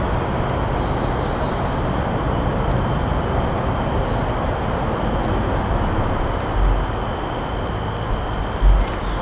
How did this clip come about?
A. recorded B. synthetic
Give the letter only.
A